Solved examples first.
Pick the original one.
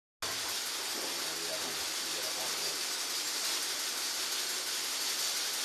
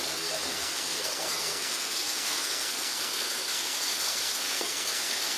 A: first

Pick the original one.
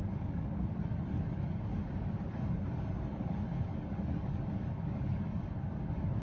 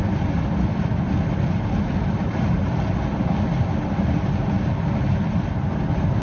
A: second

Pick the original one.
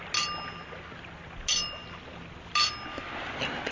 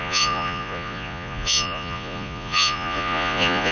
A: first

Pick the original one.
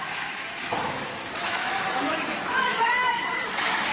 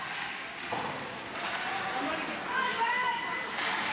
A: second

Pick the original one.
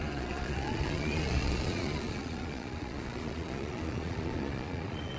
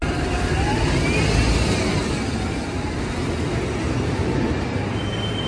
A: second